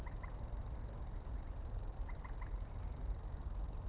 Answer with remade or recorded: recorded